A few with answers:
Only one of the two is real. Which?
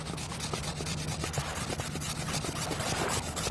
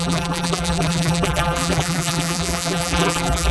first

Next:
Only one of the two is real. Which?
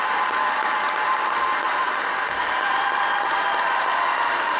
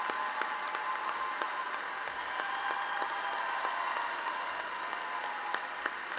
second